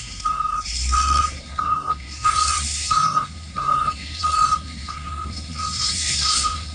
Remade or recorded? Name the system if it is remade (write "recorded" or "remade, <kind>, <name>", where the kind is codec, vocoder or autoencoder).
remade, codec, SNAC